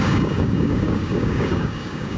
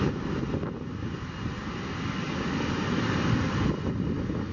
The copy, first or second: first